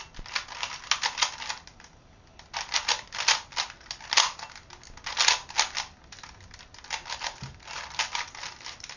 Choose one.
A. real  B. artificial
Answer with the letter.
A